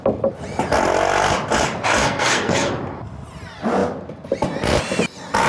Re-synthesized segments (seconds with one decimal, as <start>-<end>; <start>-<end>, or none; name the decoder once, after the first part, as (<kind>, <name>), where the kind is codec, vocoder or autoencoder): 2.0-2.7 (codec, SNAC)